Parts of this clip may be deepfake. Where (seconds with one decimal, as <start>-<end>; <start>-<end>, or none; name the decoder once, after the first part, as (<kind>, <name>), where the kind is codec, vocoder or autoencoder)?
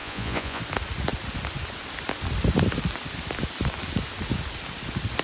0.0-0.6 (vocoder, Vocos)